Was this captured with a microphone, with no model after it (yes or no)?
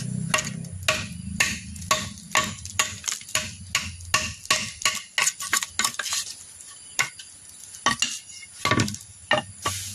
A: yes